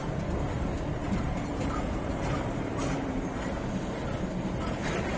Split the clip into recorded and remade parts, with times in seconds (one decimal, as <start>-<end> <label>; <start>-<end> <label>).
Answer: 0.0-1.0 recorded; 1.0-3.4 remade; 3.4-5.2 recorded